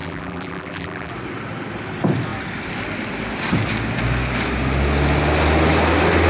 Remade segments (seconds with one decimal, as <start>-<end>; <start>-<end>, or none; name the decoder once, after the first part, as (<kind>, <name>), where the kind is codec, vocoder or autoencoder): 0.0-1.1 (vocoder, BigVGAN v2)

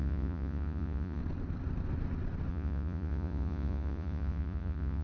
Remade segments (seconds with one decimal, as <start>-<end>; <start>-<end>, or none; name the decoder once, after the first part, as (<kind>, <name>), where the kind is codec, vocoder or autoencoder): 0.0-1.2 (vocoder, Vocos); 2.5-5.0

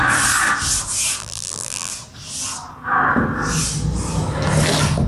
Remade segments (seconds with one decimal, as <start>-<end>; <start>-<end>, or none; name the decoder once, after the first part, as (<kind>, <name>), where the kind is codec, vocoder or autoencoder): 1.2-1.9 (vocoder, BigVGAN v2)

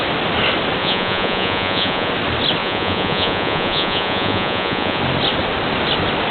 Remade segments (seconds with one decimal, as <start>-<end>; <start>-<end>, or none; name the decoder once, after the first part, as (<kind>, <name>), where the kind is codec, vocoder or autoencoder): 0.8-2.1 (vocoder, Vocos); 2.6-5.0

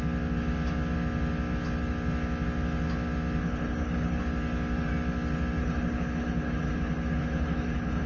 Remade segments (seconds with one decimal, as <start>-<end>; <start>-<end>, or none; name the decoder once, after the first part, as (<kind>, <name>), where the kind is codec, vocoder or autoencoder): 3.4-4.2 (codec, HILCodec); 5.6-8.1